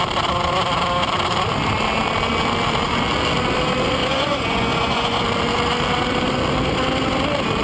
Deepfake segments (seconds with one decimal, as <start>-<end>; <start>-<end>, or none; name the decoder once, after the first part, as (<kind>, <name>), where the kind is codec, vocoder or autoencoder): 4.0-5.2 (vocoder, Vocos)